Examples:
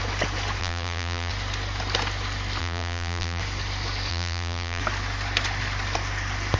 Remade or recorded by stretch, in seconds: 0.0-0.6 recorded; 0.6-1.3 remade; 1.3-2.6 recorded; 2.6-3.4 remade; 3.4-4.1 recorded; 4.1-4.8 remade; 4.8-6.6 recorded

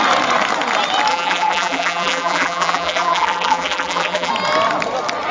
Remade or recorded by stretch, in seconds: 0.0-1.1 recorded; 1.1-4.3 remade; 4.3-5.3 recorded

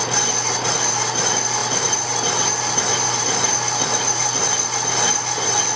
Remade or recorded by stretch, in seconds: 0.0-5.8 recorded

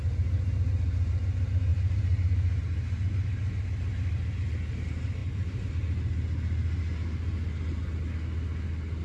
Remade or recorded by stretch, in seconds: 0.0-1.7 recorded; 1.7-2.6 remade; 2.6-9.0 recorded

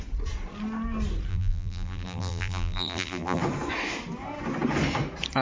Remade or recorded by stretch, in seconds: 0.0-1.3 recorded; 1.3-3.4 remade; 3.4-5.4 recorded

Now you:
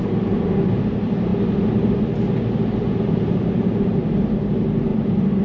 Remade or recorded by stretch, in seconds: 0.0-1.3 remade; 1.3-2.6 recorded; 2.6-4.0 remade; 4.0-4.5 recorded; 4.5-5.4 remade